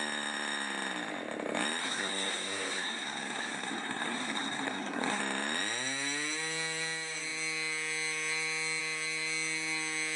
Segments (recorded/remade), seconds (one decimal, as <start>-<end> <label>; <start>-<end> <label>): 0.0-1.8 recorded; 1.8-5.2 remade; 5.2-10.2 recorded